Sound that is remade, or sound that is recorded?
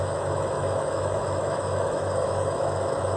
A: remade